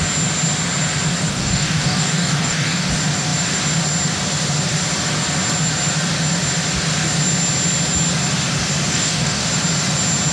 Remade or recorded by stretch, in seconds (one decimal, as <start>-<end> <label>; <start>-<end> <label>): 0.0-1.3 recorded; 1.3-2.9 remade; 2.9-8.9 recorded; 8.9-9.5 remade; 9.5-10.3 recorded